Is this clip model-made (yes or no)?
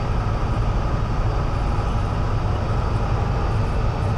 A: no